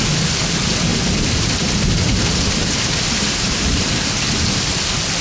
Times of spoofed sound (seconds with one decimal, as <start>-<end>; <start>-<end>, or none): 0.9-3.9